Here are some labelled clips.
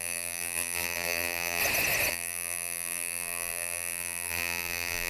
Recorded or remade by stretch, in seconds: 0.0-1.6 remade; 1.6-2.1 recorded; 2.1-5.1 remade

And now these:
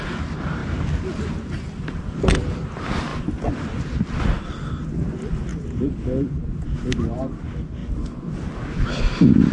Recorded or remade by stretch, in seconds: 0.0-9.5 recorded

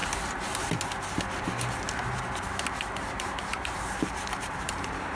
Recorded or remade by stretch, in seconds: 0.0-3.1 recorded; 3.1-5.1 remade

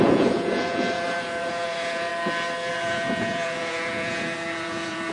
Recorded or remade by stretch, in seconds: 0.0-2.1 remade; 2.1-2.7 recorded; 2.7-5.1 remade

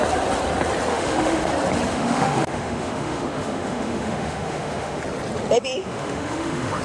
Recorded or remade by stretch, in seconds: 0.0-0.9 recorded; 0.9-1.5 remade; 1.5-1.9 recorded; 1.9-5.0 remade; 5.0-5.8 recorded; 5.8-6.8 remade

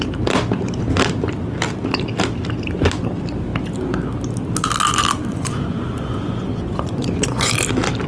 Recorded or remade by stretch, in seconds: 0.0-5.3 recorded; 5.3-7.5 remade; 7.5-8.1 recorded

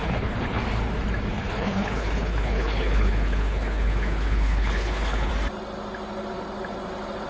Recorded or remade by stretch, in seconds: 0.0-0.6 remade; 0.6-1.3 recorded; 1.3-5.3 remade; 5.3-7.3 recorded